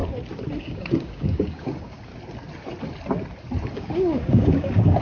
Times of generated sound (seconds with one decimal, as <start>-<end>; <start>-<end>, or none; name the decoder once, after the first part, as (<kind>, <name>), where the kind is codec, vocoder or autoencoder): 0.6-2.1 (codec, DAC); 3.7-5.0